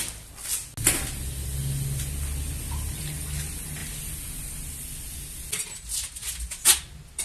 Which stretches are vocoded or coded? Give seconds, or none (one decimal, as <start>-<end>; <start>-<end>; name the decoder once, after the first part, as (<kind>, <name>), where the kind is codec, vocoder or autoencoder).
none